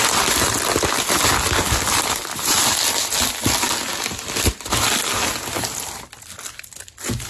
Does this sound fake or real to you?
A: real